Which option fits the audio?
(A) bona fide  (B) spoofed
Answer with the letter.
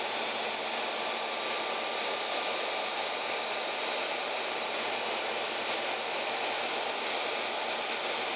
A